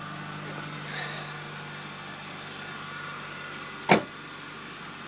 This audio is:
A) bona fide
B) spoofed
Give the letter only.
A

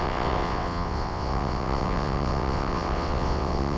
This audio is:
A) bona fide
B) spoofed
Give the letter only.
B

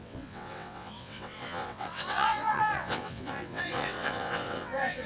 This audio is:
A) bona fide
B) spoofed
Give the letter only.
B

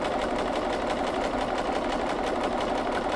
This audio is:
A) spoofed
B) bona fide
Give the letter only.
B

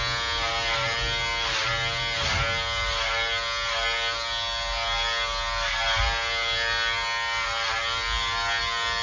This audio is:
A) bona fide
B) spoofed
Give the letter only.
A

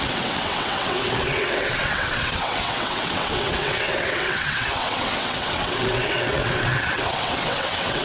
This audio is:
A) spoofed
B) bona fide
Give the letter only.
A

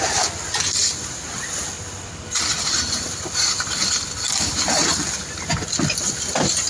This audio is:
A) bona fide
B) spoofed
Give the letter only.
A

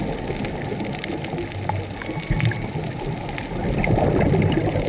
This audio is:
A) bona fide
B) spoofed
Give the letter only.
A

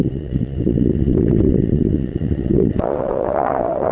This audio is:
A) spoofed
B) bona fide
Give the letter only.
A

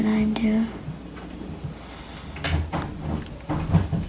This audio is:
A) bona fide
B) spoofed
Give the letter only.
A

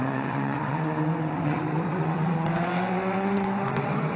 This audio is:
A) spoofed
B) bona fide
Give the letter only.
A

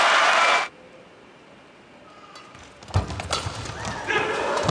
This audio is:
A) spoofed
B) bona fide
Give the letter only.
B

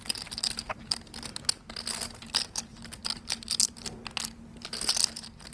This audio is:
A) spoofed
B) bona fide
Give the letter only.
B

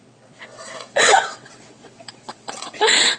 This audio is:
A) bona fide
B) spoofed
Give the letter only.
B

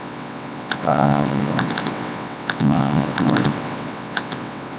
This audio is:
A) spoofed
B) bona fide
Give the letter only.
A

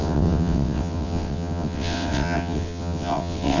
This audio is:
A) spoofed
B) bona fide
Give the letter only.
A